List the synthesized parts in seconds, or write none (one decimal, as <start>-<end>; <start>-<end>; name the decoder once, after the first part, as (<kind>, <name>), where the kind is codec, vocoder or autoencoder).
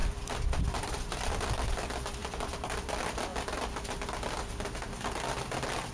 0.0-3.3 (vocoder, BigVGAN v2)